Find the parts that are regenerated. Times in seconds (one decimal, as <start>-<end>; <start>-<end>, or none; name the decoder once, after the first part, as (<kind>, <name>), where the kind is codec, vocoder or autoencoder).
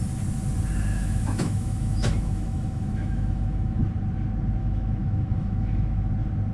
0.9-3.8 (autoencoder, DAC-VAE); 4.6-6.1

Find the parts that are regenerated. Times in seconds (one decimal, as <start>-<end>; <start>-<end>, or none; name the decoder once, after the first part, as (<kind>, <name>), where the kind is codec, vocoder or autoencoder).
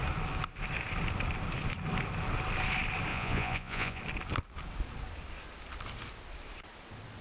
3.1-4.0 (vocoder, Vocos)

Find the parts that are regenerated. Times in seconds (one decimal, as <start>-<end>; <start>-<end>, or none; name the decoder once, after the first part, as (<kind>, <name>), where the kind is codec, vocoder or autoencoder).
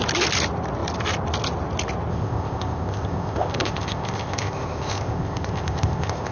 2.1-6.3 (codec, ZipCodec)